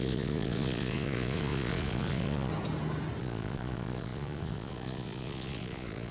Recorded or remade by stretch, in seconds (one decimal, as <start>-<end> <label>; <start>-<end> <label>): 0.0-2.5 remade; 2.5-3.2 recorded; 3.2-6.1 remade